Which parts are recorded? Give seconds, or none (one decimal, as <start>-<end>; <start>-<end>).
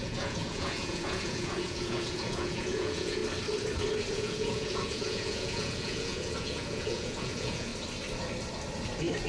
3.2-4.1; 7.7-9.3